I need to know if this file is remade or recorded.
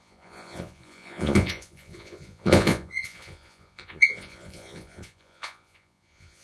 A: remade